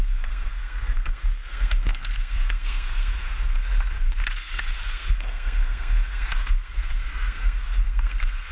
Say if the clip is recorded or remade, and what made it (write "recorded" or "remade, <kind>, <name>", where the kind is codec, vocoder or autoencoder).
remade, codec, SNAC